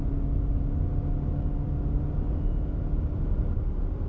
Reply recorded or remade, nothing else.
recorded